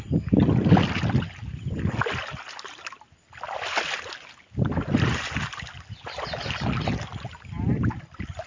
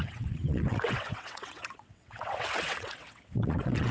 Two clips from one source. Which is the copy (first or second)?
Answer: second